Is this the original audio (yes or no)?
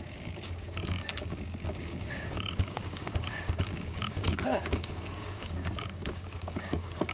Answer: no